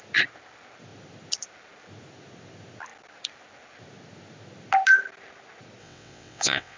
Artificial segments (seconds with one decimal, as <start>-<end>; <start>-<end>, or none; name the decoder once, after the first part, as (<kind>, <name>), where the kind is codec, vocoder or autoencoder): 5.8-6.8 (vocoder, WaveNeXt)